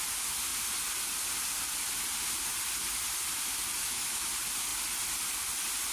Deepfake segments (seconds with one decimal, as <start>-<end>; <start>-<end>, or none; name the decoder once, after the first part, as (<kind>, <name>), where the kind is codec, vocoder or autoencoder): 3.8-4.3 (autoencoder, DAC-VAE)